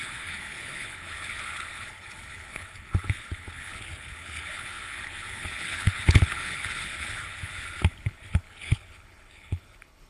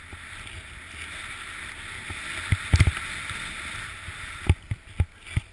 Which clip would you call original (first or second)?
second